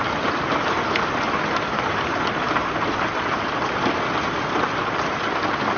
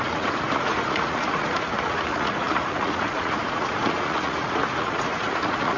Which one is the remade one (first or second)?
second